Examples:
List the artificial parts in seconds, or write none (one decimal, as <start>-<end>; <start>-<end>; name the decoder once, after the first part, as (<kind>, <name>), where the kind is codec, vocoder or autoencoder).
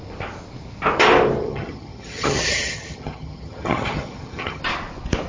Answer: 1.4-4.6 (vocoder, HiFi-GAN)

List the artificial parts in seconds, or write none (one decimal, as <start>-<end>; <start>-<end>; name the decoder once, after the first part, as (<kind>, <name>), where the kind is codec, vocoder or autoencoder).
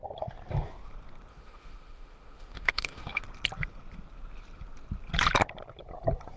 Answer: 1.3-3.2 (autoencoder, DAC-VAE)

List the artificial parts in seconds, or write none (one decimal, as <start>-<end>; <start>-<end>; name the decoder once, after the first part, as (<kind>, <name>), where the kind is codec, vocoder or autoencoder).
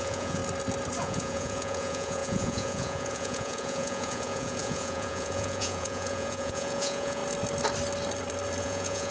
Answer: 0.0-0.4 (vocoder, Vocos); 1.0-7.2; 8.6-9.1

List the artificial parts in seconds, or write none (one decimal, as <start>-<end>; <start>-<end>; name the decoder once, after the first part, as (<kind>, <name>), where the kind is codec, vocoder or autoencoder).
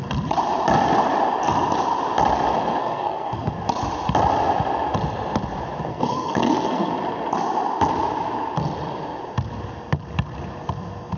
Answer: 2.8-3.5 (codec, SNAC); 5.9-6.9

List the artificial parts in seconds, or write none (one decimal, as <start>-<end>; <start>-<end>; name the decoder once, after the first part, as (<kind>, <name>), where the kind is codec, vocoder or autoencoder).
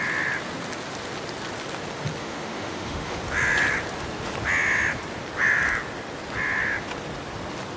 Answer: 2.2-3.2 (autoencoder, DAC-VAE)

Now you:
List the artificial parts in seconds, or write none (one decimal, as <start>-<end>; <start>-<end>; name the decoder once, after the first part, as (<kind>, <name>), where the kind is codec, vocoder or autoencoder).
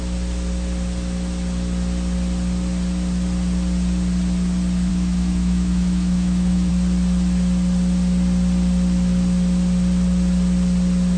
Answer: 4.9-6.7 (autoencoder, DAC-VAE)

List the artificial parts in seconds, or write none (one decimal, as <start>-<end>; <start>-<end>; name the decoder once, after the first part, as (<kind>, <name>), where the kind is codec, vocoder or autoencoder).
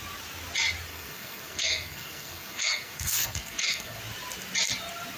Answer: 0.9-4.0 (codec, SNAC)